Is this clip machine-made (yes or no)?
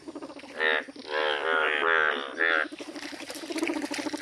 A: no